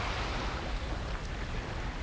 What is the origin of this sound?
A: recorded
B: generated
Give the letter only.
A